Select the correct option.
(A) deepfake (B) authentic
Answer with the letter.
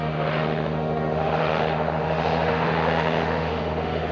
A